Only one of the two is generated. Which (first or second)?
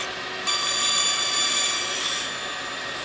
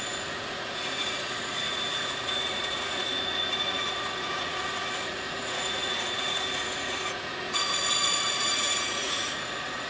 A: second